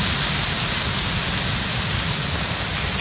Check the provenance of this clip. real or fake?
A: real